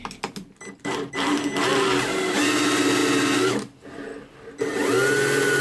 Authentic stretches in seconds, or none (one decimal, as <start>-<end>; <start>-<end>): 0.0-5.6